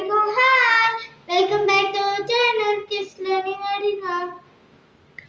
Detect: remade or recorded recorded